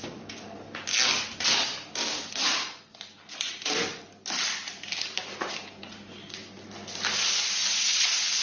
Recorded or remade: recorded